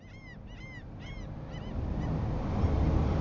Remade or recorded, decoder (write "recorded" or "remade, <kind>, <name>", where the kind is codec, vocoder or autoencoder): recorded